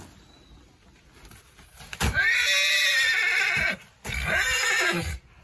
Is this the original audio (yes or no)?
yes